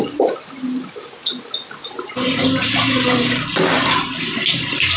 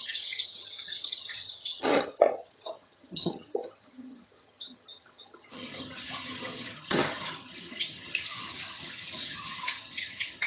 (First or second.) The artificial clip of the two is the second